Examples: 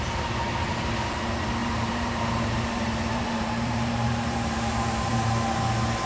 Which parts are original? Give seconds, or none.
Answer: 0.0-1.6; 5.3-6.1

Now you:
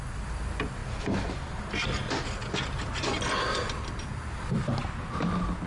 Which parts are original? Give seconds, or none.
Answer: 0.0-5.7

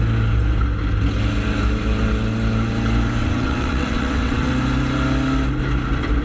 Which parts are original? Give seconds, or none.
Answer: 0.0-3.2; 4.5-6.2

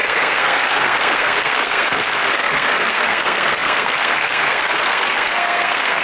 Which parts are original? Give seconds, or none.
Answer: none